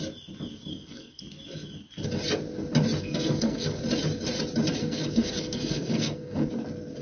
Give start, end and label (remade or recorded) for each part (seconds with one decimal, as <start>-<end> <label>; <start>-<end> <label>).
0.0-0.7 recorded; 0.7-1.2 remade; 1.2-3.0 recorded; 3.0-3.8 remade; 3.8-4.8 recorded; 4.8-6.5 remade; 6.5-7.0 recorded